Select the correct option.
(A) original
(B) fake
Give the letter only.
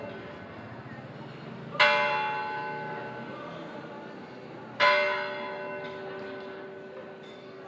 A